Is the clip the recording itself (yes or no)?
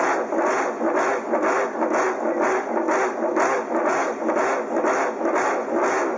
yes